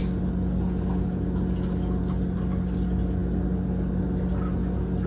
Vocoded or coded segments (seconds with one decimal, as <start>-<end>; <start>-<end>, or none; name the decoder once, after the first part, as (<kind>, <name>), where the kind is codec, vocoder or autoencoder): none